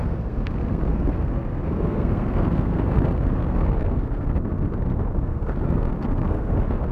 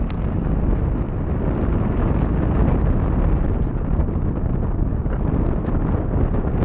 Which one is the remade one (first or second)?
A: first